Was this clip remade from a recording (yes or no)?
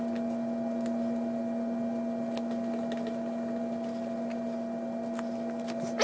no